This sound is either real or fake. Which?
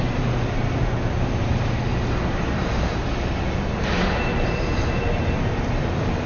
real